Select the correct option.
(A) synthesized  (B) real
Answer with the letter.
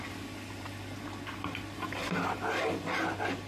A